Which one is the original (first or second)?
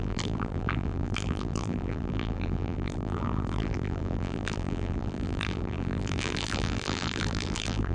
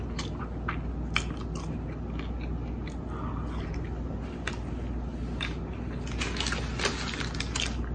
second